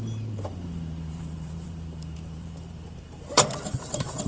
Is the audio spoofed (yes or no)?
yes